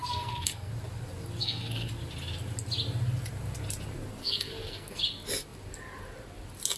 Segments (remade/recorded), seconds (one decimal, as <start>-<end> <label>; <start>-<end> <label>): 0.0-0.7 remade; 0.7-1.4 recorded; 1.4-1.9 remade; 1.9-4.2 recorded; 4.2-5.0 remade; 5.0-6.8 recorded